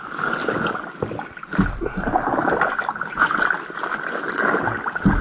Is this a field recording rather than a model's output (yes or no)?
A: yes